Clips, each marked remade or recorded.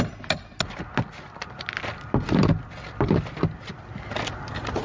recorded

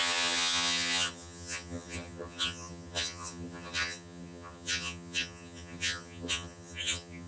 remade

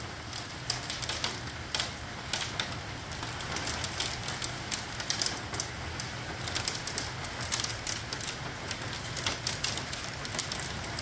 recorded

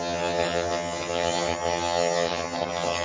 remade